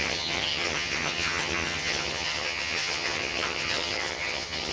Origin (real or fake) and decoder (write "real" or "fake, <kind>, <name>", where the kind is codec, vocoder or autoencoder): fake, vocoder, HiFi-GAN